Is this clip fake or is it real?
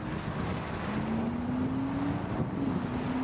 real